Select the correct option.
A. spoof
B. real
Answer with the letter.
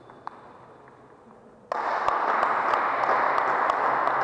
B